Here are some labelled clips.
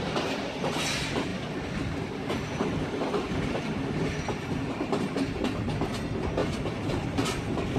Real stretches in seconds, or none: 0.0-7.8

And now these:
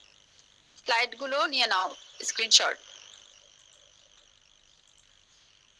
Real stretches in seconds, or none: 0.0-1.8; 2.4-5.8

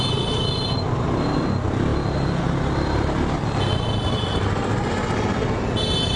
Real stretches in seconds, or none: 0.0-6.2

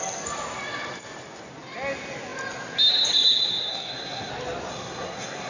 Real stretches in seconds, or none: 0.0-3.7; 4.3-4.7

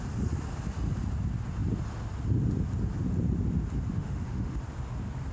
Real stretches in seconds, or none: 0.0-3.9; 4.6-5.3